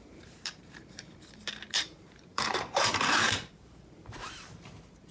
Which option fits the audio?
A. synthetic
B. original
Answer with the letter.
A